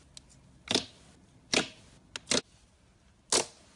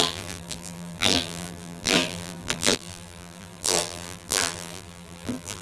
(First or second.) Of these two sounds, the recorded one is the first